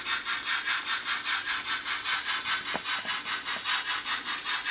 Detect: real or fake real